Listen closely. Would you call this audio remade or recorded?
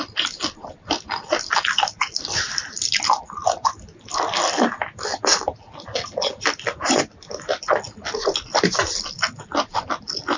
recorded